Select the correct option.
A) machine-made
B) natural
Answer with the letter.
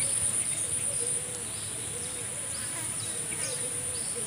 A